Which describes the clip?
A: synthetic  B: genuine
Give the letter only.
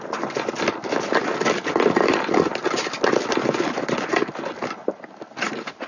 B